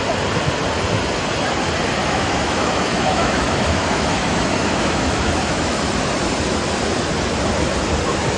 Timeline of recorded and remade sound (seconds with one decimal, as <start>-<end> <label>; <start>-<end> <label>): 0.0-2.0 recorded; 2.0-5.8 remade; 5.8-8.4 recorded